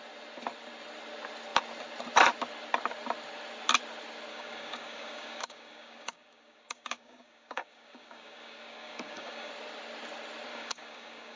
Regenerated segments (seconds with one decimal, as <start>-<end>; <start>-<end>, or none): 4.3-9.5; 10.5-11.4